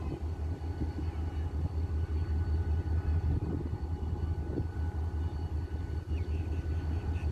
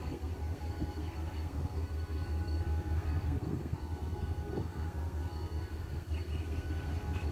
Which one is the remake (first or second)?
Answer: second